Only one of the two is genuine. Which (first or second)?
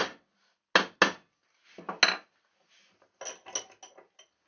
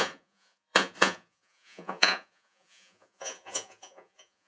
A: first